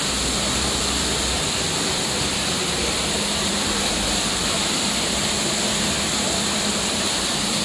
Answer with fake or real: fake